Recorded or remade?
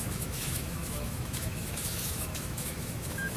remade